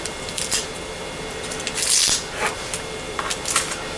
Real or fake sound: real